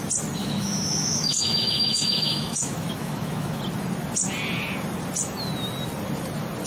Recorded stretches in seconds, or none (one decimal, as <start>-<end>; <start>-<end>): 0.0-0.4; 3.6-6.7